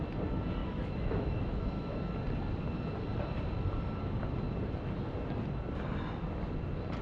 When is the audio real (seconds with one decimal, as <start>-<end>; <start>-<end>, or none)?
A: 0.0-0.6; 2.2-7.0